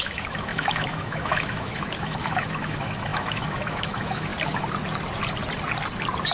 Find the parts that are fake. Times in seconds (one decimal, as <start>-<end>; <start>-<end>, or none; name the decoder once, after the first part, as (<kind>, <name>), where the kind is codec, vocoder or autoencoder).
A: 0.0-4.3 (autoencoder, DAC-VAE)